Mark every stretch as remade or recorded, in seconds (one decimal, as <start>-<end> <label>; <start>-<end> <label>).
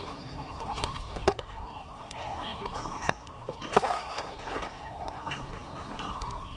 0.0-6.6 remade